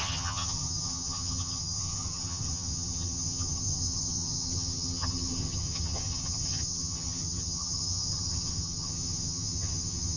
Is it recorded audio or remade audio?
remade